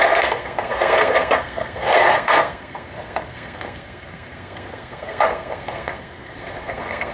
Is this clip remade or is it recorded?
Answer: remade